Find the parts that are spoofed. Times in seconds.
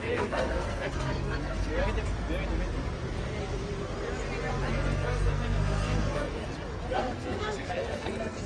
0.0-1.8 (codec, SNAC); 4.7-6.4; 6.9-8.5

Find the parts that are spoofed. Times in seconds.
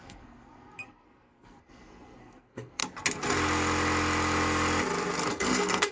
0.0-2.8 (codec, SNAC); 5.3-5.9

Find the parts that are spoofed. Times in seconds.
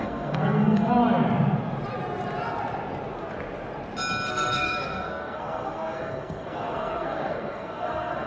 0.0-1.0 (codec, SNAC); 4.3-8.3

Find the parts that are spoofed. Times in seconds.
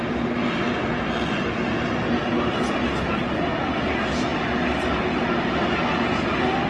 none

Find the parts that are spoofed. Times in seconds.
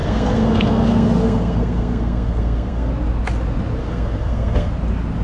0.0-2.9 (codec, SNAC); 3.8-4.7